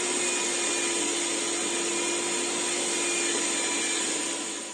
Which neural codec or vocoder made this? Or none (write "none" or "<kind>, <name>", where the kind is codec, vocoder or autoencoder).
none